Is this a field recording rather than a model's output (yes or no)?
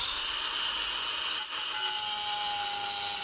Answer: yes